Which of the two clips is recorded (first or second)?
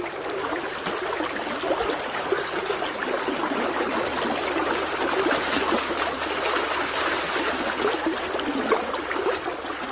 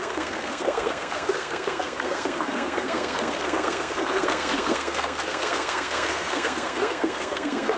first